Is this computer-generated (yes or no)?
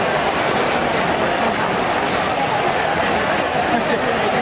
yes